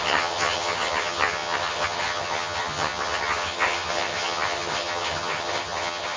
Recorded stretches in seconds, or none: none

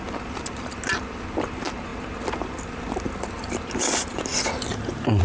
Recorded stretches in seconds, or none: 0.0-5.2

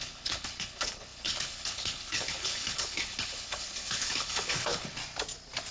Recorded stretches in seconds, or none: 5.0-5.7

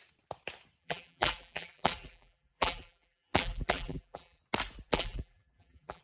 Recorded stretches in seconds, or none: 0.0-0.8; 4.4-4.9

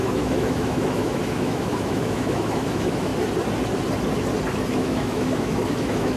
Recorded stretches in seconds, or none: 3.1-4.7